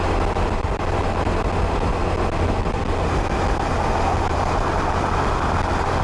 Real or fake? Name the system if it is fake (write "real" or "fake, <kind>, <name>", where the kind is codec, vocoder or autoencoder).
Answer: real